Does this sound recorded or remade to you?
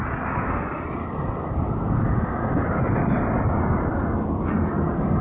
recorded